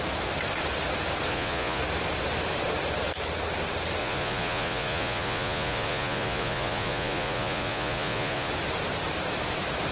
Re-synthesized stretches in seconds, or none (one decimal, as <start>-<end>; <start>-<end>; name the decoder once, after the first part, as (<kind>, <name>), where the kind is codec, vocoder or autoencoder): 1.3-1.8 (vocoder, Vocos); 4.0-8.5